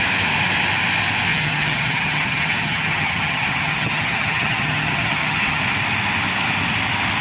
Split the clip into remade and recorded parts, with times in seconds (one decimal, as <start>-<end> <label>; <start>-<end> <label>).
0.0-1.3 recorded; 1.3-5.6 remade; 5.6-7.2 recorded